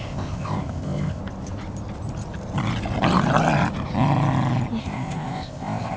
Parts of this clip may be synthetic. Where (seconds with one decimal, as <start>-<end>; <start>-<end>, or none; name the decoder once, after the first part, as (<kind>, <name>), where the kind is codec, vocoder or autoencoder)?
0.0-1.2 (codec, ZipCodec); 4.8-6.0